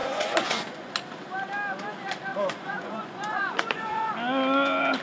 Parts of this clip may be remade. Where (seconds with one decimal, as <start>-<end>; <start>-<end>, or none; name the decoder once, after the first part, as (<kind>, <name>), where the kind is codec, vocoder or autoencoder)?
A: 0.0-0.9 (vocoder, Vocos); 2.3-4.1